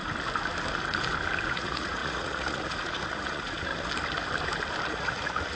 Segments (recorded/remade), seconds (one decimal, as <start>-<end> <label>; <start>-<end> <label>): 0.0-1.5 recorded; 1.5-3.7 remade; 3.7-4.9 recorded; 4.9-5.5 remade